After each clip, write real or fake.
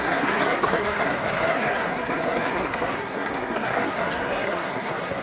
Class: fake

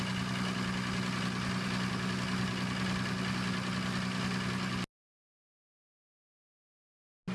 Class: real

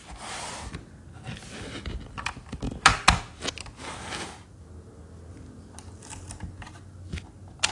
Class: real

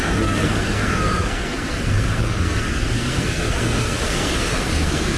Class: fake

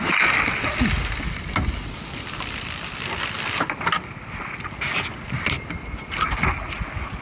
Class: real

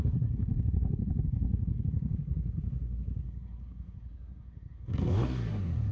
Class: fake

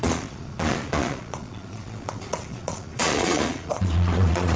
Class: fake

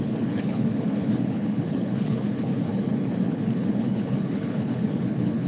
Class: fake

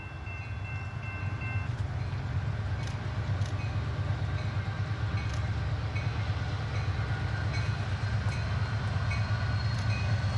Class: real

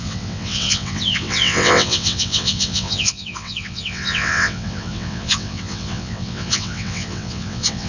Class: fake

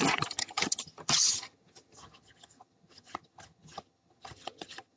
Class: fake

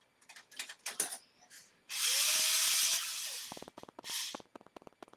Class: real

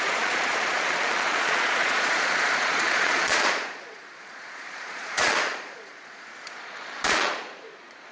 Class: fake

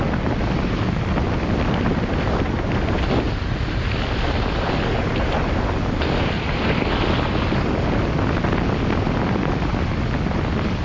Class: real